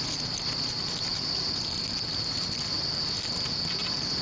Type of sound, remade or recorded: recorded